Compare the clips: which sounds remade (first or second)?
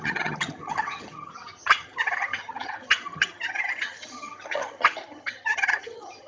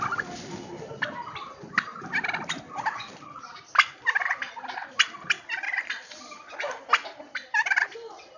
first